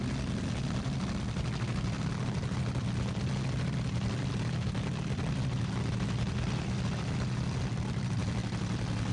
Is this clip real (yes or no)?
yes